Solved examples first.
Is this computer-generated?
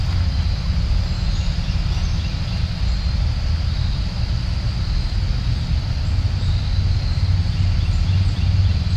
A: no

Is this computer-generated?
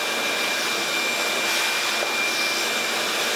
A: no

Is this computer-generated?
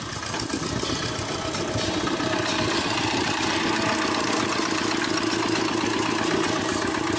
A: no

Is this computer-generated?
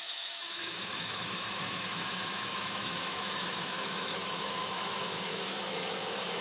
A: yes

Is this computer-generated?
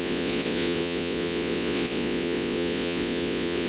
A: yes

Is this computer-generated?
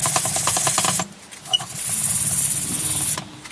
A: no